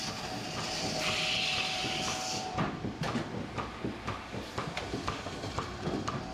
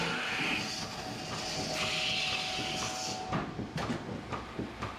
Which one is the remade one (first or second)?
first